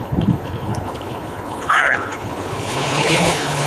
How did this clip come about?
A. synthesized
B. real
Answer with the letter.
A